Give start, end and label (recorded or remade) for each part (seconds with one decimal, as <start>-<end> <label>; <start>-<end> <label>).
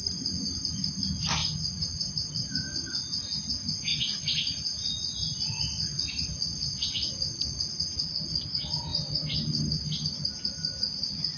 0.0-1.4 recorded; 1.4-2.1 remade; 2.1-11.4 recorded